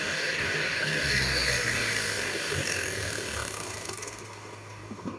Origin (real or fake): fake